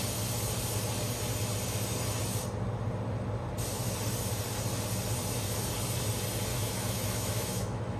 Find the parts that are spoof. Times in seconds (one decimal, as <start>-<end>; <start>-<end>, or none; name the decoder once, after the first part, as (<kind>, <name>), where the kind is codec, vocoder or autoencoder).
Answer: 6.5-8.0 (autoencoder, DAC-VAE)